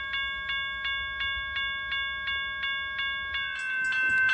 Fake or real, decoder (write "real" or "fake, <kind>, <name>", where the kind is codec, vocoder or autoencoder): real